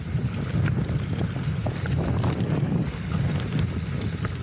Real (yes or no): yes